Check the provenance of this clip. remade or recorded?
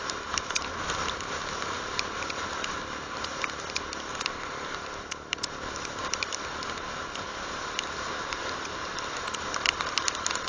recorded